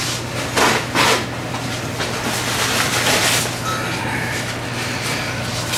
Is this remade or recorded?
recorded